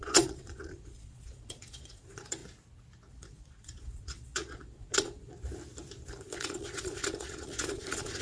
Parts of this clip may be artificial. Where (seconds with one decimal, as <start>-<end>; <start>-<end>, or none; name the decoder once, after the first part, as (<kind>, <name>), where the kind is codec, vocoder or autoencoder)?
0.0-2.4 (vocoder, Vocos); 3.1-5.3; 6.2-8.2